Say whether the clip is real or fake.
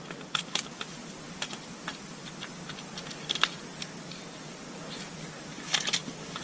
real